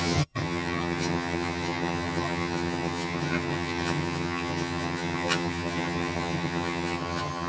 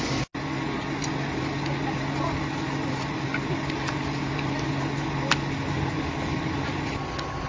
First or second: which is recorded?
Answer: second